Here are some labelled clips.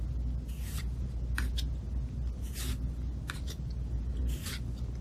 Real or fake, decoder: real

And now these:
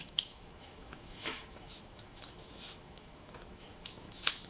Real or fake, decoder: fake, autoencoder, DAC-VAE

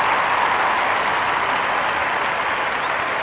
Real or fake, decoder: real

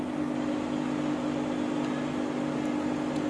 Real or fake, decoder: real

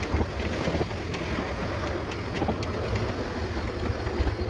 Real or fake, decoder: real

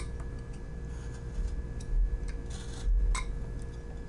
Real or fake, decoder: real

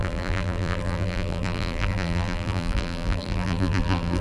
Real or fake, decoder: fake, vocoder, BigVGAN v2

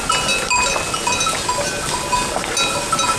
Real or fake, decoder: real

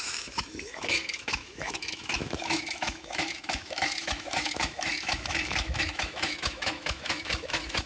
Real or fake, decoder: fake, autoencoder, DAC-VAE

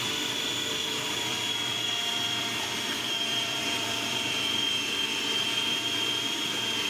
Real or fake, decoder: fake, vocoder, BigVGAN v2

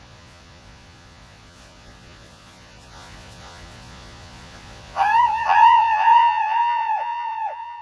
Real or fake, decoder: fake, vocoder, Vocos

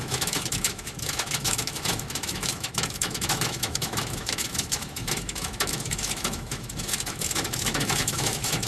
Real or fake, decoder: fake, autoencoder, DAC-VAE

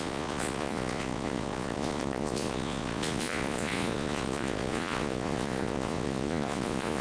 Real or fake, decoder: fake, vocoder, Vocos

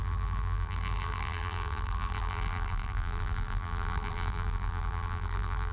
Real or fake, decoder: fake, vocoder, BigVGAN v2